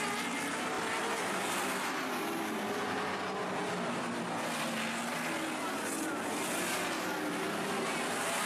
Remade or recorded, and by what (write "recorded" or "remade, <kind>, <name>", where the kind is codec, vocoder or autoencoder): recorded